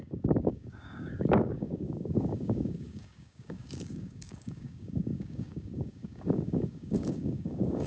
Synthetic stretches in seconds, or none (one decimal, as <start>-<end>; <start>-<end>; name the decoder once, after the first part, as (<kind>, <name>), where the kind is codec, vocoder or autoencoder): 0.0-7.9 (codec, DAC)